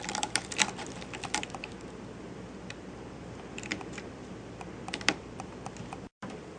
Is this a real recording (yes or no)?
no